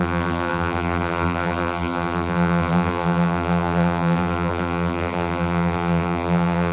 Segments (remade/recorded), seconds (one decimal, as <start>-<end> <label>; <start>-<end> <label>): 0.0-6.7 remade